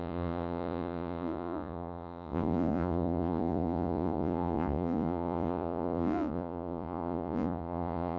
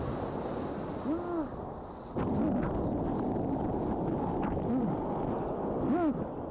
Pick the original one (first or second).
second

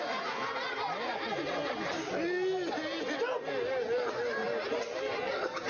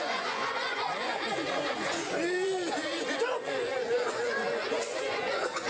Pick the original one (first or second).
first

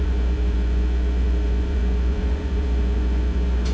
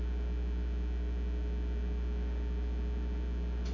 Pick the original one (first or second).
second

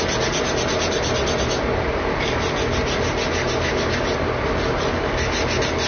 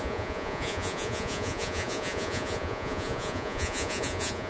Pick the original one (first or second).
first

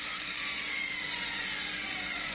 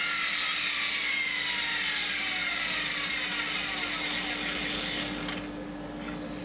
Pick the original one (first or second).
second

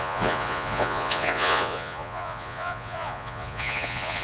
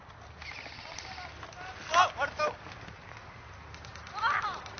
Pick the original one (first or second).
second